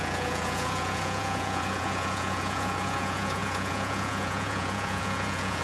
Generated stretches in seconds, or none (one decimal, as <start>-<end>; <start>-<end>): 0.0-5.6